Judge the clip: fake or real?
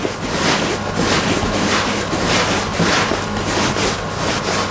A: real